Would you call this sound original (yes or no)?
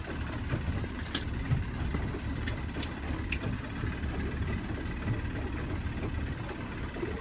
yes